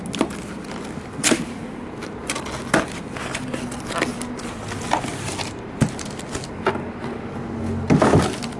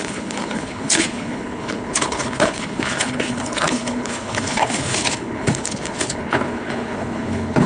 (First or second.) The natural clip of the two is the first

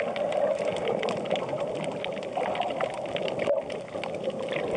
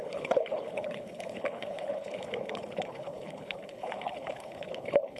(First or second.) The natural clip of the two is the first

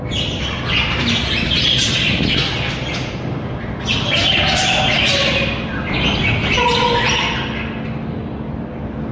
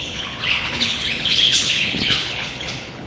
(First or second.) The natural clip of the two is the first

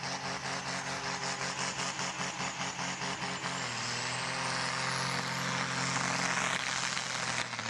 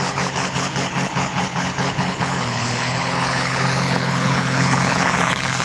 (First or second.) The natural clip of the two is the first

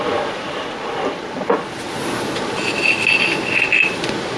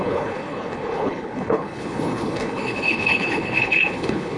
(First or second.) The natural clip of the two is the first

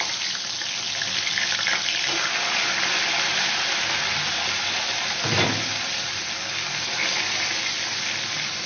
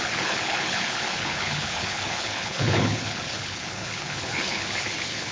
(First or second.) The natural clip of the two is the first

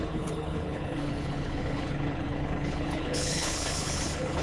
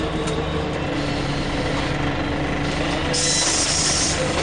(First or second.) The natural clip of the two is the second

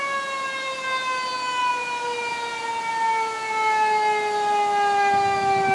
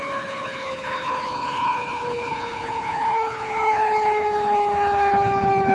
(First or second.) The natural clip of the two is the first